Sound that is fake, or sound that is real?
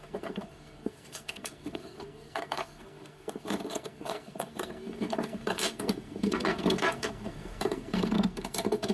fake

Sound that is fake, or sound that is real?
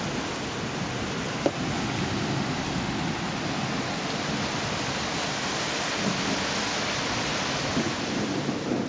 real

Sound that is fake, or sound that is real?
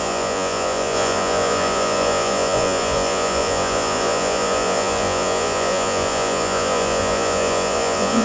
fake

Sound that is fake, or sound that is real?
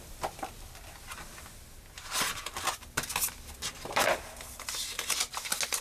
real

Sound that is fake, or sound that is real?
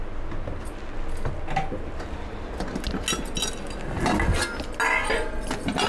real